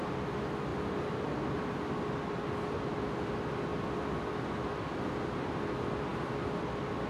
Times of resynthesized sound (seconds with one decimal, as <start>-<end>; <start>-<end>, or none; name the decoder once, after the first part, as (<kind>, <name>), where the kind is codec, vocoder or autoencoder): 0.7-2.5 (vocoder, BigVGAN v2); 3.7-5.2